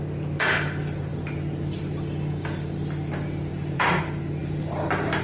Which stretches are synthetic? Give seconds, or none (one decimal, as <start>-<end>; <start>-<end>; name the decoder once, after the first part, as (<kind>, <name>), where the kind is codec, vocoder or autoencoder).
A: 3.5-4.0 (vocoder, BigVGAN v2); 4.4-5.2